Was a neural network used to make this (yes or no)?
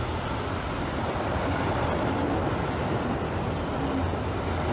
no